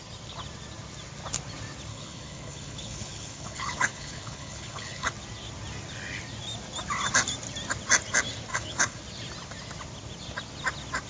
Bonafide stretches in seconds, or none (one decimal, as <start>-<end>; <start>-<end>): 0.0-1.9; 5.1-8.5; 9.0-11.1

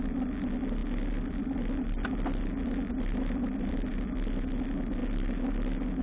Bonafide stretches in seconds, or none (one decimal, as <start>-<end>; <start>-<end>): 0.0-6.0

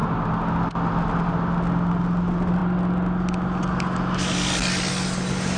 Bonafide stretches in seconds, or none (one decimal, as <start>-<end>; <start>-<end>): 0.0-5.6

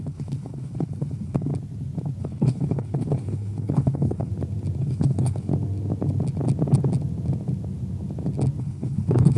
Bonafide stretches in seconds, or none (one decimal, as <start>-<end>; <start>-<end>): 1.5-2.2; 4.3-4.8; 5.5-8.6

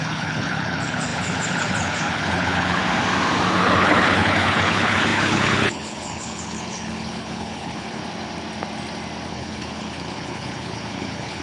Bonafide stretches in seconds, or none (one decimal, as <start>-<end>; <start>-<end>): 2.8-3.6; 8.0-9.3

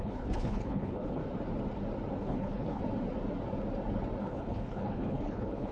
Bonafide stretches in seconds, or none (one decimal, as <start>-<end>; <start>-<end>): 1.2-2.2; 2.8-4.2

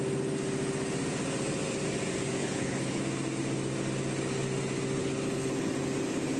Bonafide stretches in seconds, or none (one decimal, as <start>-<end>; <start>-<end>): 0.0-2.4; 3.0-5.0; 5.7-6.4

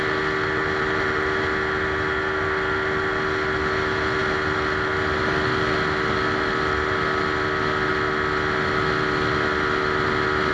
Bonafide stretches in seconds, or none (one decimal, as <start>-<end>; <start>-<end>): 0.0-10.5